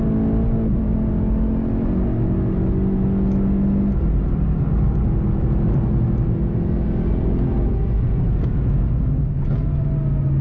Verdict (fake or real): real